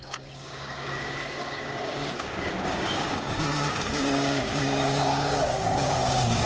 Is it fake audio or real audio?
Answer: fake